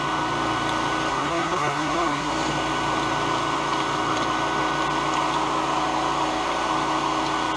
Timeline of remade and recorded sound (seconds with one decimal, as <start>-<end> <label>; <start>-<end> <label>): 0.0-1.1 recorded; 1.1-2.3 remade; 2.3-7.6 recorded